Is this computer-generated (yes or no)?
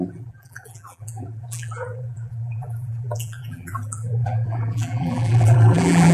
yes